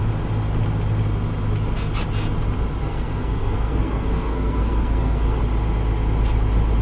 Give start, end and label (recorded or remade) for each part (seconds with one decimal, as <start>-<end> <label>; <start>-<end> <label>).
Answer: 0.0-2.8 recorded; 2.8-5.4 remade; 5.4-6.8 recorded